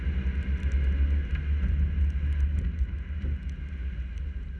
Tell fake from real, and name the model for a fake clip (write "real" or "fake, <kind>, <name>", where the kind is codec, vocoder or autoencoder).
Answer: real